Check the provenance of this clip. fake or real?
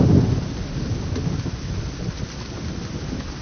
real